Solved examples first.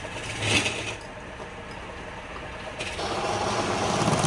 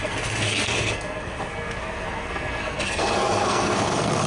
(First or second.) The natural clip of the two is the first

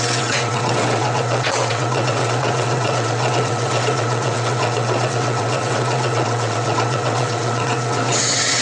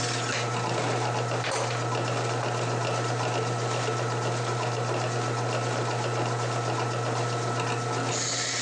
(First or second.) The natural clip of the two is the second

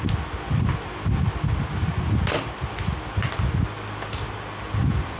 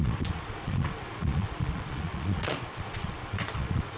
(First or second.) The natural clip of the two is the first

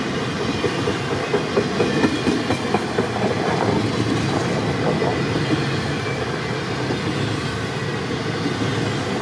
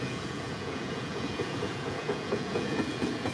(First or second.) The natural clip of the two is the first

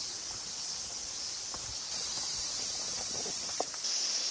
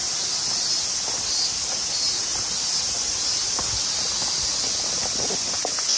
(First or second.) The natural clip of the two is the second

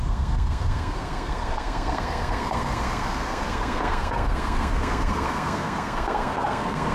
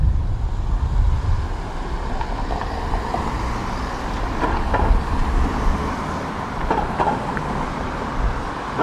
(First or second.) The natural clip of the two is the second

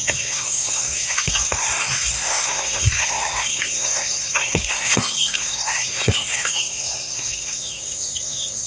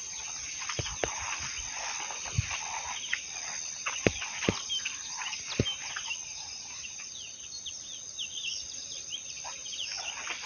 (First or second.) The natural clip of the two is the second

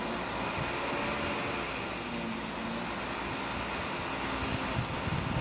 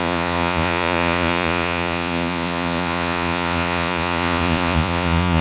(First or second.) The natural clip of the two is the first